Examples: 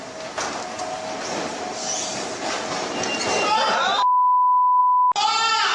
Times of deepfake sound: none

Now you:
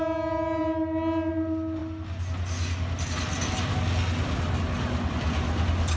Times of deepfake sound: none

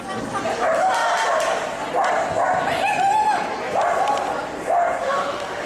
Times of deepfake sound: 5.0-5.7